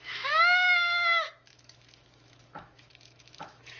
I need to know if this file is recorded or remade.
remade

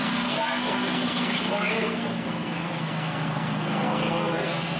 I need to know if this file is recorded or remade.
remade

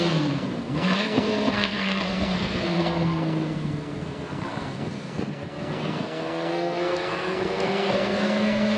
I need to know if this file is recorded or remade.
remade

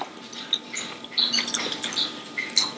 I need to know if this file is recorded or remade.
recorded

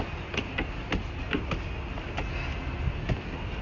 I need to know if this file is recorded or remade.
recorded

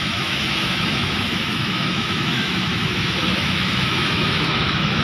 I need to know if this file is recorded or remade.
remade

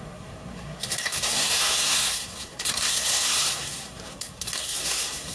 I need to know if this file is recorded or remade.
remade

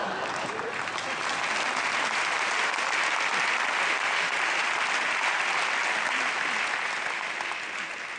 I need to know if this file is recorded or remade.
recorded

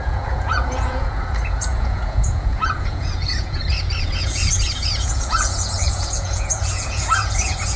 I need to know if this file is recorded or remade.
remade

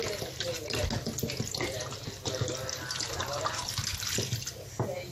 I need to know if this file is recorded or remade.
recorded